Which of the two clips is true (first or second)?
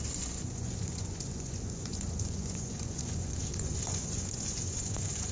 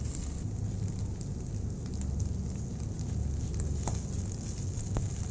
second